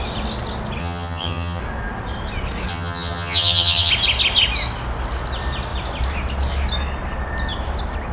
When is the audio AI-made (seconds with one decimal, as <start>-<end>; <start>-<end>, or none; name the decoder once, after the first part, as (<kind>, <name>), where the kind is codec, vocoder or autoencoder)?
0.8-1.6 (vocoder, HiFi-GAN); 2.7-3.9